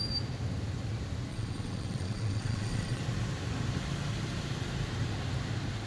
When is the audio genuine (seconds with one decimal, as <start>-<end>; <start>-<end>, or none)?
0.0-1.3; 3.0-5.9